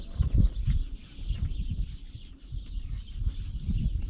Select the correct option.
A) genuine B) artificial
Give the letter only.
A